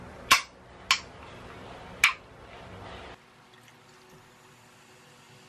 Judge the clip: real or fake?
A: real